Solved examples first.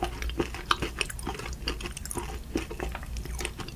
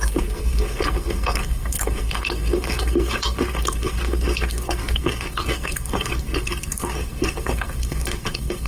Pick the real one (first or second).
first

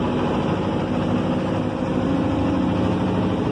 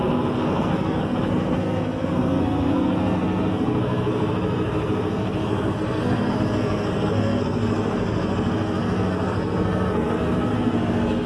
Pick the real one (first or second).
first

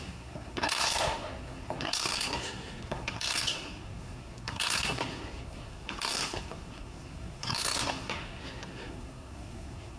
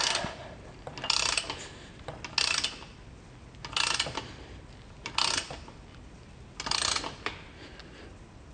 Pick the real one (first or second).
second